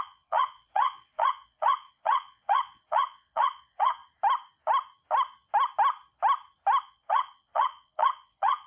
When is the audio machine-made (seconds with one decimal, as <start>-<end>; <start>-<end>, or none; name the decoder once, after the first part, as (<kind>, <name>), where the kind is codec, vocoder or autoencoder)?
0.0-4.0 (vocoder, Vocos); 6.8-8.7